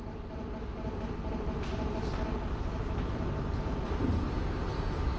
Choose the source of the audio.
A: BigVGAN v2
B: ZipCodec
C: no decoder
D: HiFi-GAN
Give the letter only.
C